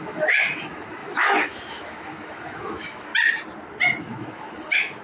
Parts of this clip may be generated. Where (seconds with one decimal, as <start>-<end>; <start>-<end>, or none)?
0.0-3.1; 4.0-5.0